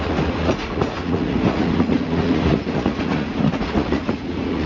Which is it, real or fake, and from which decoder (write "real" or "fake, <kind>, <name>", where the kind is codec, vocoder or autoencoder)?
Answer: fake, vocoder, Vocos